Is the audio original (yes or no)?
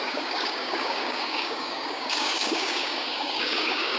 no